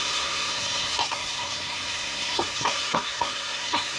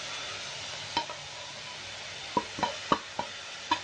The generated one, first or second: first